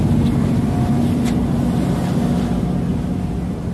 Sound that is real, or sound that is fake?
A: real